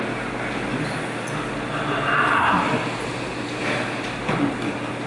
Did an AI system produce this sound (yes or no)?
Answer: no